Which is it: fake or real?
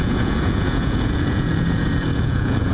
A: fake